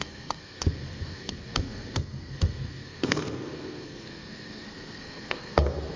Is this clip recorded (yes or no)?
no